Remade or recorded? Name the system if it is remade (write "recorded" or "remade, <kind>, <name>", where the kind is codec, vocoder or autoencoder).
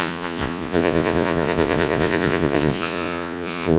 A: remade, vocoder, Vocos